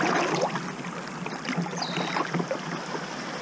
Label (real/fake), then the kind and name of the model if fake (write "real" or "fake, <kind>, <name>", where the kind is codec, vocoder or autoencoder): real